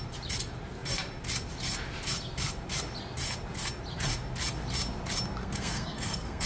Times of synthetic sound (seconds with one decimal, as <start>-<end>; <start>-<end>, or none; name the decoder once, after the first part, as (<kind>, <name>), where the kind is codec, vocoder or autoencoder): 5.4-6.5 (codec, SNAC)

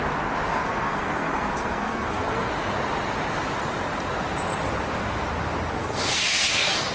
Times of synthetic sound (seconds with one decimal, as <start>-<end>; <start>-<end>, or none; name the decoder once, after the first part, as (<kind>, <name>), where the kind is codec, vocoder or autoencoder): 0.5-2.5 (codec, SNAC); 5.8-6.9

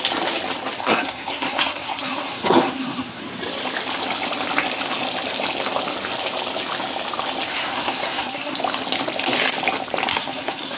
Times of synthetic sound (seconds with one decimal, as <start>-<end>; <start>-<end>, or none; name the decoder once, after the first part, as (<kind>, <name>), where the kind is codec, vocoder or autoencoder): 0.8-3.2 (codec, SNAC); 7.5-8.6; 10.1-10.8